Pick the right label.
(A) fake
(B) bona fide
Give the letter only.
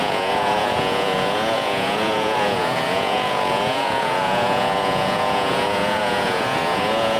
A